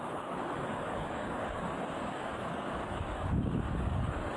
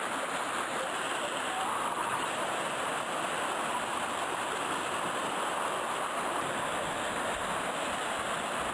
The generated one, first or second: first